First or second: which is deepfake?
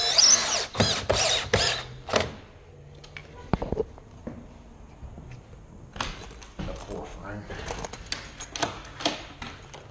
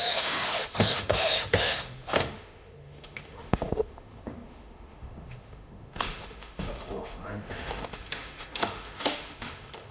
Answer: second